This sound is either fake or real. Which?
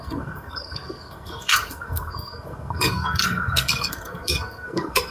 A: fake